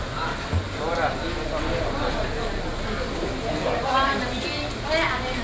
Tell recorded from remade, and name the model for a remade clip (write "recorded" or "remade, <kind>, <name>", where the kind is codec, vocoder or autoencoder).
recorded